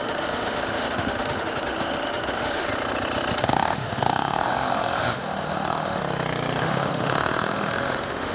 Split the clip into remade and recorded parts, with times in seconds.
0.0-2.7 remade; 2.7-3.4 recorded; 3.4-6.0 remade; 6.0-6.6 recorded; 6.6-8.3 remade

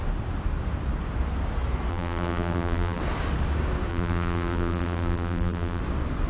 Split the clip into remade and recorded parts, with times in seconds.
0.0-1.9 recorded; 1.9-3.0 remade; 3.0-3.9 recorded; 3.9-5.8 remade; 5.8-6.3 recorded

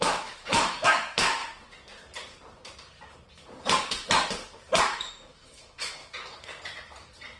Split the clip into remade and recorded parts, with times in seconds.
0.0-1.4 remade; 1.4-4.8 recorded; 4.8-6.0 remade; 6.0-7.4 recorded

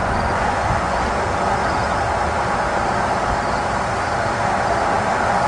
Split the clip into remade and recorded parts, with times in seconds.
0.0-1.0 remade; 1.0-5.5 recorded

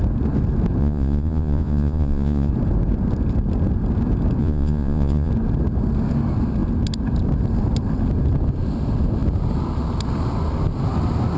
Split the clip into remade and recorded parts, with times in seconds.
0.0-0.8 recorded; 0.8-2.5 remade; 2.5-4.4 recorded; 4.4-5.3 remade; 5.3-11.4 recorded